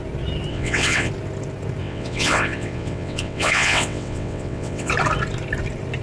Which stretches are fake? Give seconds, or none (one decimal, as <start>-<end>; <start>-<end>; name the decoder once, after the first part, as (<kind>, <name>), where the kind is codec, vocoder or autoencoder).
0.5-1.1 (vocoder, WaveNeXt); 1.8-4.9